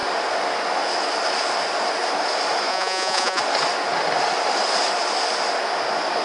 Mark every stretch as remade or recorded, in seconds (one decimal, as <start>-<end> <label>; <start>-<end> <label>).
0.0-2.7 recorded; 2.7-3.4 remade; 3.4-6.2 recorded